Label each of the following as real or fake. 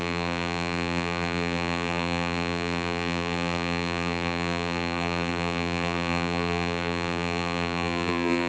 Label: fake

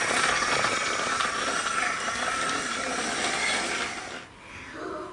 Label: real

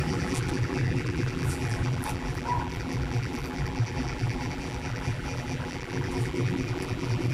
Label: fake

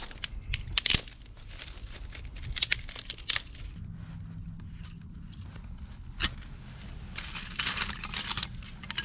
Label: real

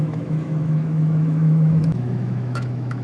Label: fake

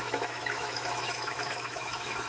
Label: fake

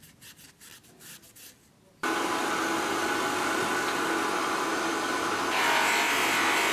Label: real